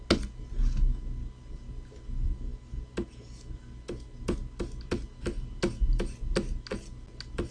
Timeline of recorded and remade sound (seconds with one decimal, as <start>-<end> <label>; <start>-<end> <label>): 0.0-7.5 recorded